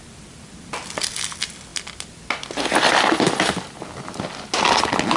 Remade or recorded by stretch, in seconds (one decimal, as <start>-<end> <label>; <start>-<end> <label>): 0.0-5.2 recorded